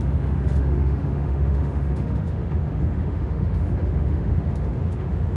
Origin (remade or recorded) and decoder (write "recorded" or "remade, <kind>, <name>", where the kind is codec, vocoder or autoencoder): remade, autoencoder, DAC-VAE